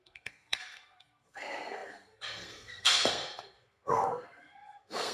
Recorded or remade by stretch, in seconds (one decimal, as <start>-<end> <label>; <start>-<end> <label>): 0.0-5.1 remade